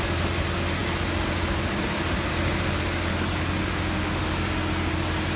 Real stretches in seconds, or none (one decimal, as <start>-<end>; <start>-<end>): 0.0-3.6; 4.3-5.4